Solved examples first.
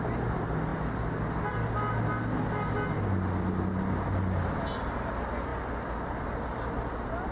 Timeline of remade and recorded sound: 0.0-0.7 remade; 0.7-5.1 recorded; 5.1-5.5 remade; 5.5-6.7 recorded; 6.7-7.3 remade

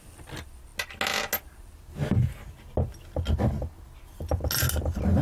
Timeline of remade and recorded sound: 0.0-5.2 recorded

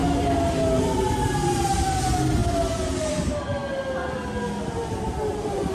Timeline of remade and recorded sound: 0.0-0.8 recorded; 0.8-2.4 remade; 2.4-2.9 recorded; 2.9-3.6 remade; 3.6-4.7 recorded; 4.7-5.7 remade

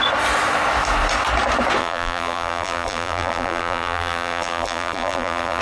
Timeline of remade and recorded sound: 0.0-1.8 recorded; 1.8-5.6 remade

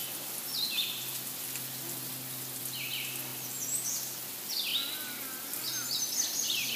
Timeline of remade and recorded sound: 0.0-2.1 remade; 2.1-2.6 recorded; 2.6-4.7 remade; 4.7-5.4 recorded; 5.4-6.8 remade

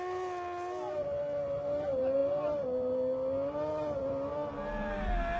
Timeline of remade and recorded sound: 0.0-5.4 recorded

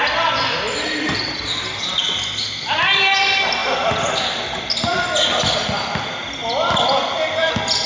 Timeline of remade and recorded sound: 0.0-3.6 recorded; 3.6-4.2 remade; 4.2-6.4 recorded; 6.4-7.5 remade; 7.5-7.9 recorded

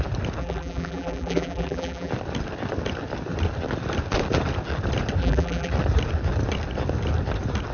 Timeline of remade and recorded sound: 0.0-0.4 recorded; 0.4-2.1 remade; 2.1-5.2 recorded; 5.2-5.7 remade; 5.7-7.7 recorded